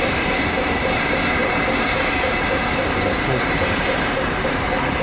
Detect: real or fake fake